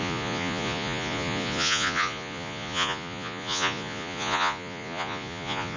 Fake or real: fake